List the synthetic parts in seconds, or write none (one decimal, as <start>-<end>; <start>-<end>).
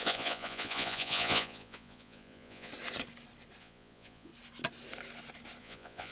0.0-2.7; 3.6-4.3; 5.6-6.1